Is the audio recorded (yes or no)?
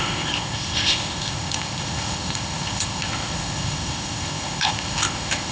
no